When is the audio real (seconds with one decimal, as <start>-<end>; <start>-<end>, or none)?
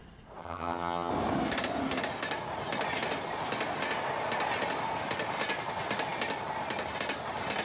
0.0-0.4; 1.1-7.6